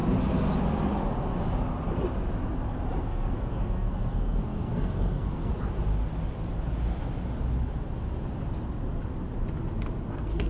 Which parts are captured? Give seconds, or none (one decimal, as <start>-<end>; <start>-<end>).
0.0-3.0; 5.5-10.1